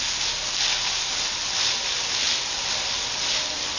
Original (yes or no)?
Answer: yes